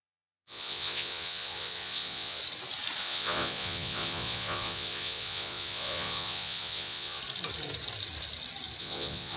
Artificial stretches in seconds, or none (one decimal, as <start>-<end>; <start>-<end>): 0.0-2.4; 3.0-7.2; 8.8-9.4